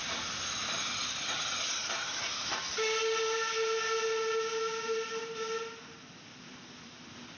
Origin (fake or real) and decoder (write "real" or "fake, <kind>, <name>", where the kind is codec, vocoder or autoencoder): real